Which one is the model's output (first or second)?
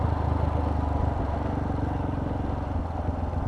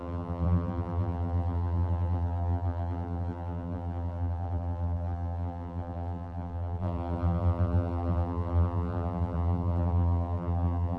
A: second